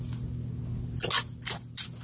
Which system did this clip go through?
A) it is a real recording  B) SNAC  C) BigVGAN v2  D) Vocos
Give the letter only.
A